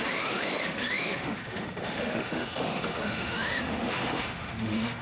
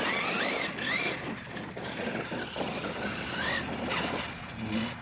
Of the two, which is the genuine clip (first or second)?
second